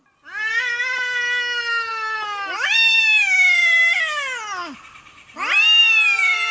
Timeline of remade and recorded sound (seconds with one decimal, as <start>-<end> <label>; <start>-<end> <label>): 0.0-6.5 recorded